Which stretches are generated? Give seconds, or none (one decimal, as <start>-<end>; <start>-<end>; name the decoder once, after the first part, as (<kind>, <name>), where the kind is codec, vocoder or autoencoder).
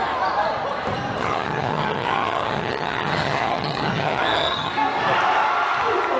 1.2-4.7 (vocoder, HiFi-GAN)